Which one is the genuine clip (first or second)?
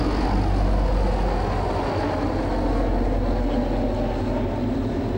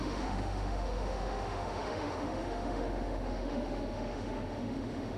first